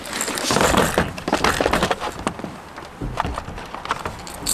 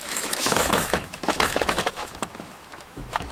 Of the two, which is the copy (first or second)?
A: second